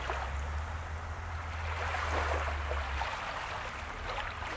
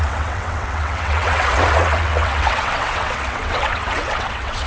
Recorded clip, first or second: first